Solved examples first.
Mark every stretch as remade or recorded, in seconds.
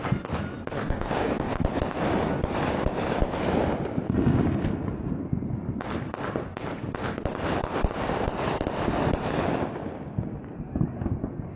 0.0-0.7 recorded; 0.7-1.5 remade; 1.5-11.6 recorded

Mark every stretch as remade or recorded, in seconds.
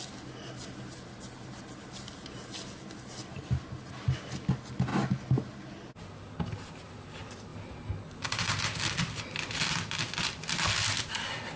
0.0-11.6 recorded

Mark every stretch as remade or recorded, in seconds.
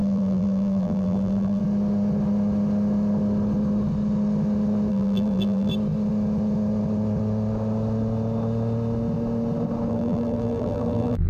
0.0-1.6 remade; 1.6-4.9 recorded; 4.9-5.7 remade; 5.7-9.9 recorded; 9.9-11.3 remade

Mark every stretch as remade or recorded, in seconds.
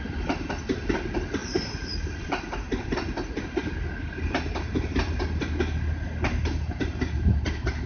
0.0-1.4 recorded; 1.4-5.5 remade; 5.5-7.9 recorded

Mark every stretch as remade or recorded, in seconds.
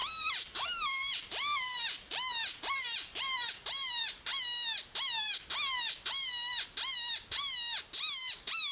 0.0-4.3 remade; 4.3-8.2 recorded; 8.2-8.7 remade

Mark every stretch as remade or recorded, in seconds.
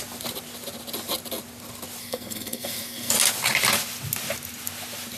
0.0-2.0 recorded; 2.0-3.1 remade; 3.1-5.2 recorded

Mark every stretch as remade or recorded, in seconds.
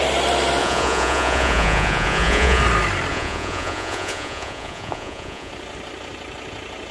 0.0-0.6 recorded; 0.6-2.6 remade; 2.6-3.1 recorded; 3.1-5.5 remade; 5.5-6.9 recorded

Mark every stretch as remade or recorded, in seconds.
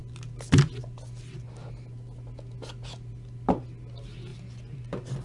0.0-5.2 recorded